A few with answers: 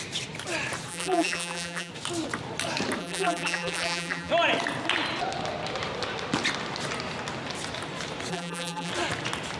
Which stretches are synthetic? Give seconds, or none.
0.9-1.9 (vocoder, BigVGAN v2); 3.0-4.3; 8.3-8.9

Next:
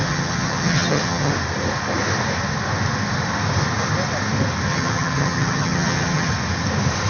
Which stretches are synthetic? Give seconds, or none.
0.0-1.3 (vocoder, HiFi-GAN); 4.7-6.3

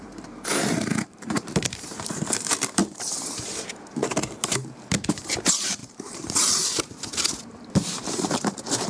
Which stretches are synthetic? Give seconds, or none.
0.0-8.9 (vocoder, BigVGAN v2)

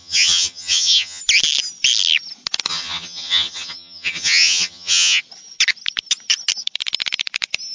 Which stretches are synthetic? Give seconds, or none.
0.0-1.2 (vocoder, HiFi-GAN); 2.7-5.2

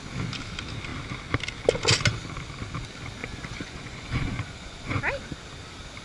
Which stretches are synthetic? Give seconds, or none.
3.2-5.0 (vocoder, Vocos)

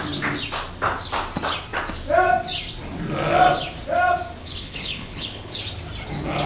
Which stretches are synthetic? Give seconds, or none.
4.4-5.6 (codec, HILCodec)